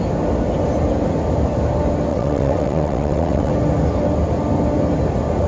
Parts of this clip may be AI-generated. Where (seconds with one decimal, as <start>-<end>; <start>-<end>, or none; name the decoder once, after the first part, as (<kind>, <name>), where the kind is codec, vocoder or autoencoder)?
2.1-3.5 (vocoder, WaveNeXt)